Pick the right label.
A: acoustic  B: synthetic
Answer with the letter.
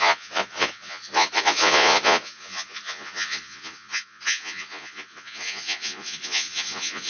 B